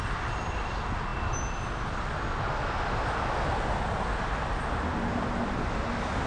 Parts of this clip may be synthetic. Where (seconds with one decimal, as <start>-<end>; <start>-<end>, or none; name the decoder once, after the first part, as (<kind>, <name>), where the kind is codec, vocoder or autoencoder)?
none